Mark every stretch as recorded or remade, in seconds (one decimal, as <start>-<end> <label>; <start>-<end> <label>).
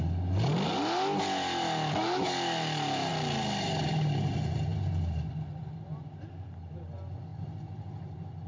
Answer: 0.0-8.5 recorded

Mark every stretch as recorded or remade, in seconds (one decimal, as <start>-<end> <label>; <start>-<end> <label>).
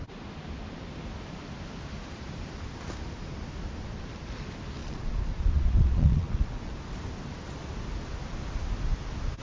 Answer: 0.0-4.8 recorded; 4.8-6.7 remade; 6.7-9.4 recorded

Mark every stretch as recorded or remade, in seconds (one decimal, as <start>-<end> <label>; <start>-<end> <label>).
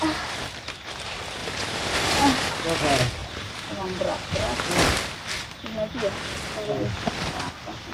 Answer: 0.0-1.4 recorded; 1.4-2.2 remade; 2.2-3.2 recorded; 3.2-4.6 remade; 4.6-7.9 recorded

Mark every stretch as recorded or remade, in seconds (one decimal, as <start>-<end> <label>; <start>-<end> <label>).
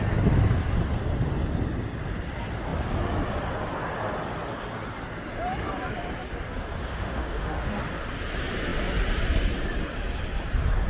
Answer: 0.0-6.9 recorded; 6.9-7.8 remade; 7.8-10.9 recorded